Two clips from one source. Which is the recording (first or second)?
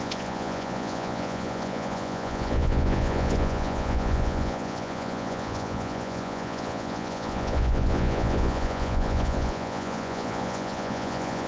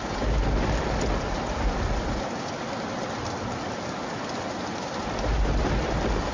second